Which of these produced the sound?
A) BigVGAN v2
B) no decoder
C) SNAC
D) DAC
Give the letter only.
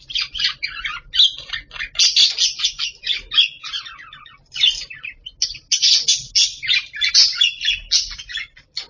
B